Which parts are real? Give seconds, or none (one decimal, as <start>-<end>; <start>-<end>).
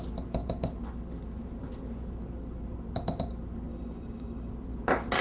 0.0-3.7; 4.5-5.2